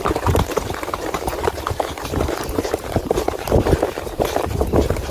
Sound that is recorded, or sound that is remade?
remade